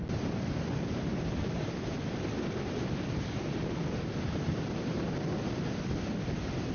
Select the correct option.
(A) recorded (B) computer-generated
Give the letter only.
A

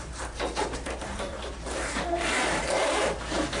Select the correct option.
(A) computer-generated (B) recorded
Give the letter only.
A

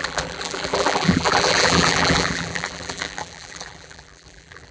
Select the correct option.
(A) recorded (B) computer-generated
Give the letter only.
B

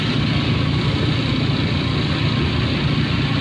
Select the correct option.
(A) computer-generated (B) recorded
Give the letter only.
B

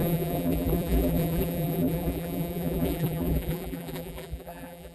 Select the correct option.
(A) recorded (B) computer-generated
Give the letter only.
B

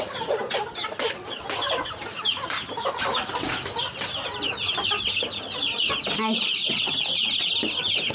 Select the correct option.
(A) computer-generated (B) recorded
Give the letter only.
B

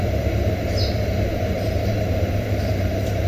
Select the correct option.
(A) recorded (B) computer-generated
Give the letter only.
B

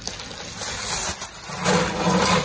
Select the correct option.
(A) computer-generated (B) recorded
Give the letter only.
B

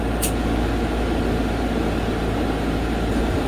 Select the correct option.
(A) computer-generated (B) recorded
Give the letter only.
B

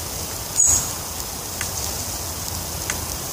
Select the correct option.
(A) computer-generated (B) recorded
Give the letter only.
B